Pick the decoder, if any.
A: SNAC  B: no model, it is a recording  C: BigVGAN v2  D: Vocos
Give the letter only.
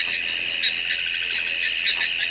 B